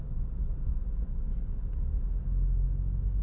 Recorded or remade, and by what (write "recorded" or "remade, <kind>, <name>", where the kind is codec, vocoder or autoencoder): recorded